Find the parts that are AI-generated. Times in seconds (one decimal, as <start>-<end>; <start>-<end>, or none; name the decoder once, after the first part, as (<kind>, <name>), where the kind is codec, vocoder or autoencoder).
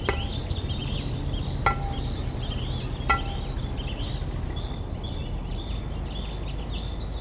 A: none